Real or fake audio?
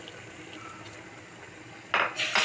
real